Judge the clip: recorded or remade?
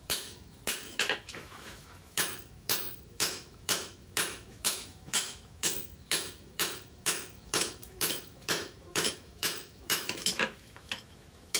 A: remade